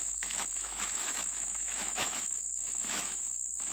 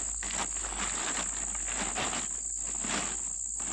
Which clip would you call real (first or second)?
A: second